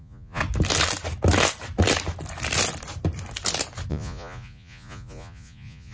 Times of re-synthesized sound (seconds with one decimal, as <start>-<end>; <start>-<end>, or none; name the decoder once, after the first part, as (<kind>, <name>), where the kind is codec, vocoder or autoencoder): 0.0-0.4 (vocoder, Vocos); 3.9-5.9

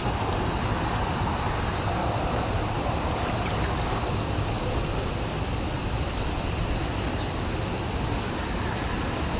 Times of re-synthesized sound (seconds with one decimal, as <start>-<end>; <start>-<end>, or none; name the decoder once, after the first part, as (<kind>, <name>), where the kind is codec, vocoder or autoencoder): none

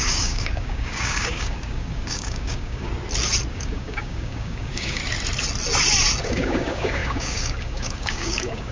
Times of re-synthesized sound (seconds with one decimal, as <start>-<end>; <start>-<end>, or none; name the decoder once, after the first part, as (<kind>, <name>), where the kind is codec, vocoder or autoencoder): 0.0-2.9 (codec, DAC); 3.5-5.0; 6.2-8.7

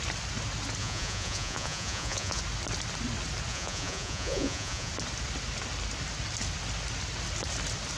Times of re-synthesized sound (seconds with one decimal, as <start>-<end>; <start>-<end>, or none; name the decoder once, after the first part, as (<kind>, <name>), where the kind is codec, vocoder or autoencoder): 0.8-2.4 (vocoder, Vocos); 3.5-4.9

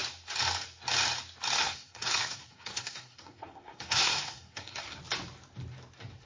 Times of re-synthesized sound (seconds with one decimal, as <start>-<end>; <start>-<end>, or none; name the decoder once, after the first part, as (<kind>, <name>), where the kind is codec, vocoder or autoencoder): 1.6-5.0 (codec, SNAC)

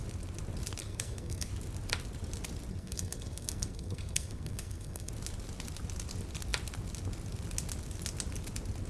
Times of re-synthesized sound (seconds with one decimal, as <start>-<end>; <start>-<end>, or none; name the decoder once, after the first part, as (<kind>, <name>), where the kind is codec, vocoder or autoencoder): 0.8-1.5 (codec, SNAC); 2.7-5.1

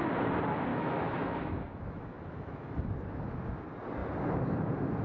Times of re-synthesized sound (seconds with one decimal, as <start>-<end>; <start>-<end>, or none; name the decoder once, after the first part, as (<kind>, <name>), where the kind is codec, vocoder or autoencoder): 0.7-2.9 (autoencoder, DAC-VAE)

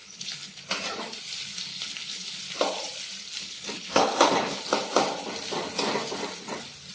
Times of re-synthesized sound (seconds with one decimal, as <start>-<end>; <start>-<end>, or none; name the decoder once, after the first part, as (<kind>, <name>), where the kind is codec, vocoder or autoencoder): 0.0-0.6 (codec, HILCodec); 1.7-2.4; 3.4-4.6